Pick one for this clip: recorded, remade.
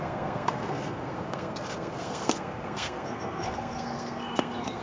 remade